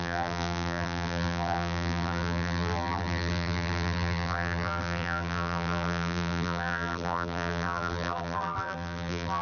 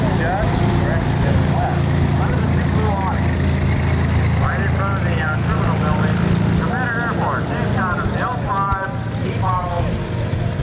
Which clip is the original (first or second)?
second